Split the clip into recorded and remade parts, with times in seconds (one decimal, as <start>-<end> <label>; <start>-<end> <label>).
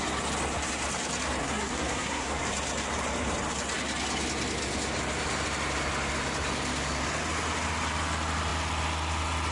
0.0-1.4 recorded; 1.4-2.4 remade; 2.4-9.5 recorded